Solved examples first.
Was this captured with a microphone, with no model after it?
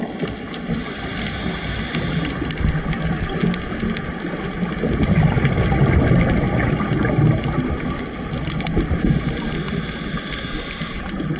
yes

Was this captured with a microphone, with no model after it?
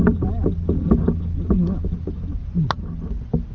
yes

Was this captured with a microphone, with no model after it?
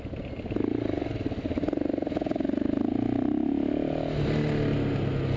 yes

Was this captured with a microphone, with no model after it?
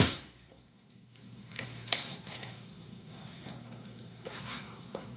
no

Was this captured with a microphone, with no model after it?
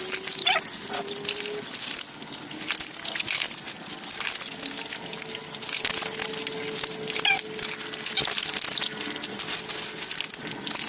yes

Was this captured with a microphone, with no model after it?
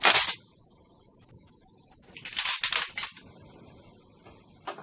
yes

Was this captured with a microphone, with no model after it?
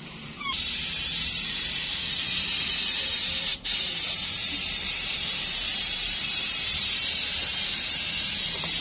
no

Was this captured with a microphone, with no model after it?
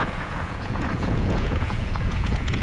no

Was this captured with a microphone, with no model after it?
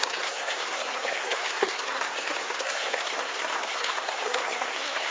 no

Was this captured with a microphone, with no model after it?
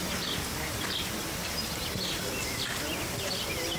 yes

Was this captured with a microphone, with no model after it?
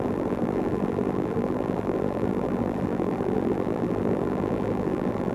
no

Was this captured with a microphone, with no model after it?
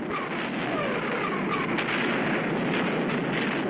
yes